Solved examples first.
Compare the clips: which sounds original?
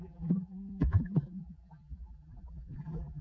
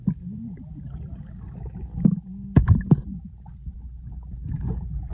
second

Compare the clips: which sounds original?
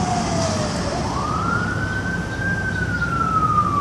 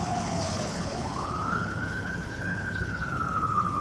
first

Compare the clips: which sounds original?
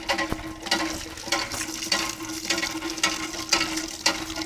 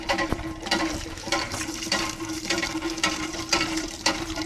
first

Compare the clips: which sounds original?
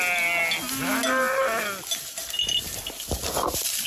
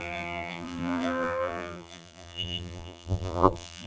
first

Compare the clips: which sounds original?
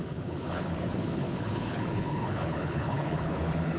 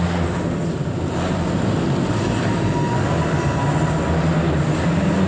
second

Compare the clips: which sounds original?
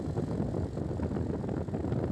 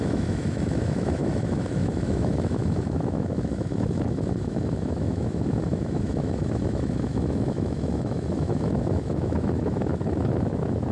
first